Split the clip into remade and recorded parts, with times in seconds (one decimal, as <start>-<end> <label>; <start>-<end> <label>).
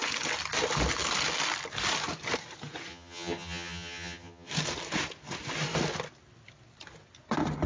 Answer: 0.0-2.9 recorded; 2.9-4.5 remade; 4.5-7.7 recorded